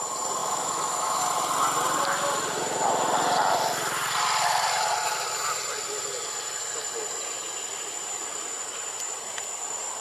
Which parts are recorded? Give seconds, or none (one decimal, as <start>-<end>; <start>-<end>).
0.0-0.4; 1.2-10.0